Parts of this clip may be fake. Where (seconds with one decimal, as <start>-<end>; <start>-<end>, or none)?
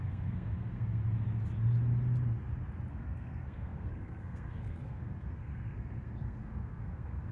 0.0-1.0; 2.9-7.3